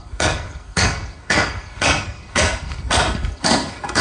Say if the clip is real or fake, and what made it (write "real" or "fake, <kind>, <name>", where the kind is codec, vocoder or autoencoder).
fake, codec, SNAC